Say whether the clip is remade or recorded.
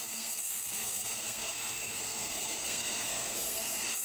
remade